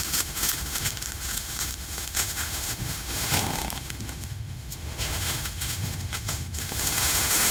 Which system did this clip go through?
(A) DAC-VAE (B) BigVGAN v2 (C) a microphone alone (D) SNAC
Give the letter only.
A